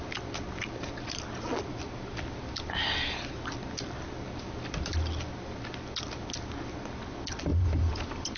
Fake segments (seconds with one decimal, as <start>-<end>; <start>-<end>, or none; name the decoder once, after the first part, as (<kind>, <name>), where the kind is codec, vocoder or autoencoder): 2.8-3.5 (vocoder, BigVGAN v2); 7.5-8.4